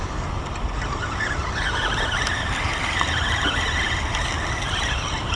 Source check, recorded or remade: recorded